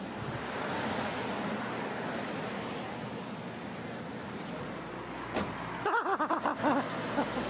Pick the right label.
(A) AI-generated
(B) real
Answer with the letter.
B